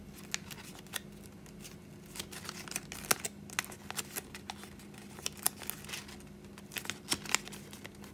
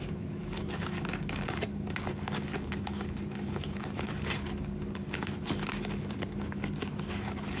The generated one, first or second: second